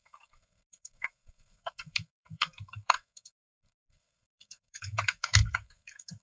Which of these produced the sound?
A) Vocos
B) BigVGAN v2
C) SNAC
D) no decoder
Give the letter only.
C